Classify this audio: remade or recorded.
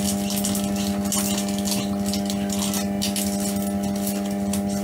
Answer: recorded